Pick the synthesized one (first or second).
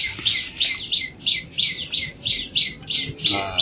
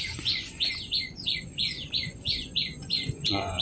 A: second